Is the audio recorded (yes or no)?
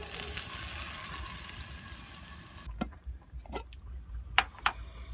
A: yes